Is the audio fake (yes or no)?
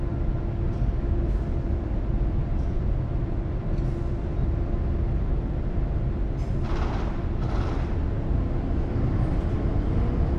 no